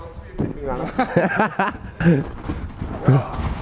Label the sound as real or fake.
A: real